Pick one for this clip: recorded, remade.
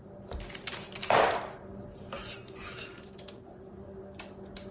recorded